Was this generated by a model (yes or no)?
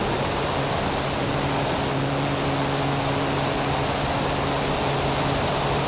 no